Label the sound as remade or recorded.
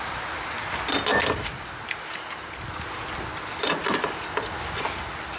recorded